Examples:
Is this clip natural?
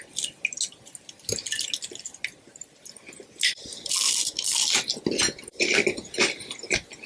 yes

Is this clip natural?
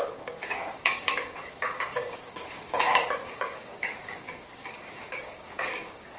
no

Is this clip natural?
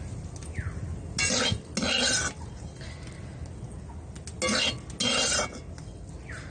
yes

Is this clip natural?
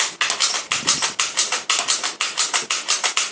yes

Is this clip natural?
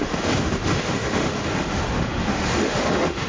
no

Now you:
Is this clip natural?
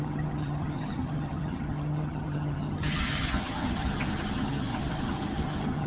no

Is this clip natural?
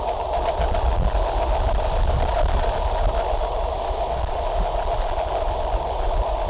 yes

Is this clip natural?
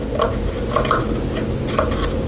yes